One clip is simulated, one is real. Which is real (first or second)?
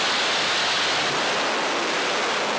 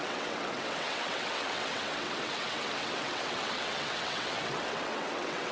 first